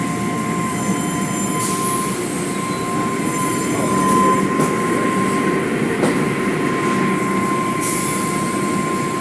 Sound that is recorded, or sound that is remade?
recorded